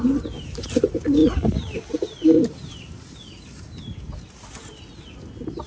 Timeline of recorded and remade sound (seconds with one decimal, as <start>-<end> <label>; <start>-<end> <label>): 0.0-5.7 recorded